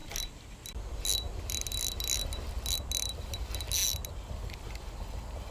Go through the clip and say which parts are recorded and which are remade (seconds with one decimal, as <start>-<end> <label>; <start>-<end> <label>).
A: 0.0-5.5 recorded